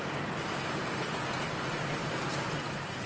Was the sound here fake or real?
real